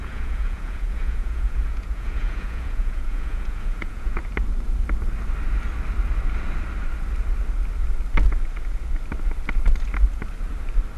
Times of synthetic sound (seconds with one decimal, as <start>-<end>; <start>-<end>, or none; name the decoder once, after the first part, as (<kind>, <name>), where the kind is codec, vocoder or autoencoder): 0.0-4.2 (vocoder, Vocos)